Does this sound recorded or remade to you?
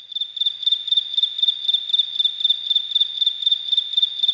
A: recorded